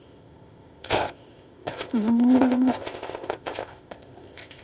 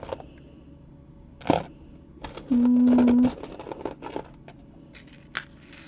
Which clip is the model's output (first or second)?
first